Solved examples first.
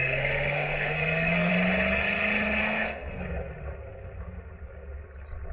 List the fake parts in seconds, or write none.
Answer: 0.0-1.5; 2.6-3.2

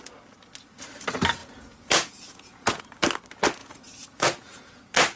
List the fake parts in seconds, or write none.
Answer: 1.4-2.8; 3.6-4.8

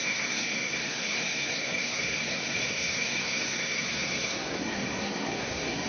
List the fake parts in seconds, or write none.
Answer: 0.0-5.9

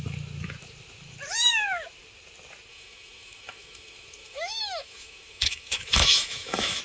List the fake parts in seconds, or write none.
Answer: 2.7-6.8

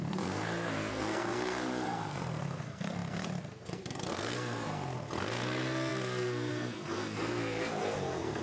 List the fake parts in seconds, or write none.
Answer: 0.0-8.4

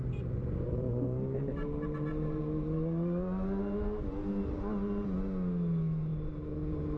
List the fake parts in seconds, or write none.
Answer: 0.4-2.4

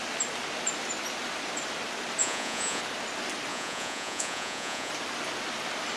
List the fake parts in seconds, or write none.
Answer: 2.2-2.8; 3.5-4.9